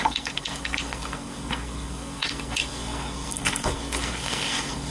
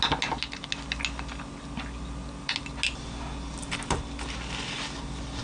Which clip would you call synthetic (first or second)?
first